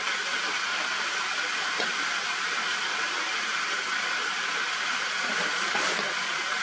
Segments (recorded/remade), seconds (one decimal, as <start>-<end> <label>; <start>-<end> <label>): 0.0-6.6 recorded